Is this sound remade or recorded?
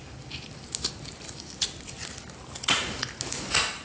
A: recorded